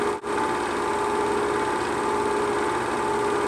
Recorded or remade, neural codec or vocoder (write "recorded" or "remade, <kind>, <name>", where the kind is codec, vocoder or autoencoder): recorded